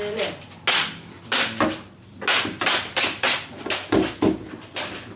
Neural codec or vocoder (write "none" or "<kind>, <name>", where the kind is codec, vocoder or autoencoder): none